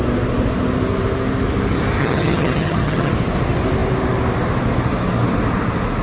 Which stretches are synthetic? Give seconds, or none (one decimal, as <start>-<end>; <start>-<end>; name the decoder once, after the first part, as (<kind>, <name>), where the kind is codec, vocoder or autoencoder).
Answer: 2.0-3.1 (vocoder, HiFi-GAN)